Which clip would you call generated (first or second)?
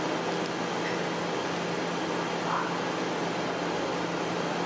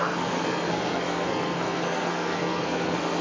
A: second